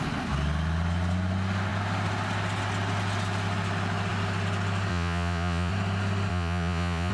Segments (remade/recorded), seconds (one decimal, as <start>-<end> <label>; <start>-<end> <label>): 0.0-4.9 recorded; 4.9-5.7 remade; 5.7-6.3 recorded; 6.3-7.1 remade